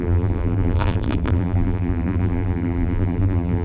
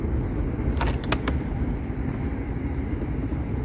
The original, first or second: second